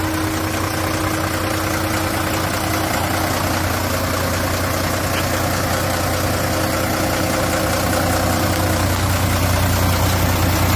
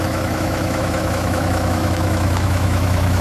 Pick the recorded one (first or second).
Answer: first